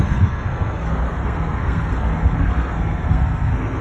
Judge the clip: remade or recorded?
remade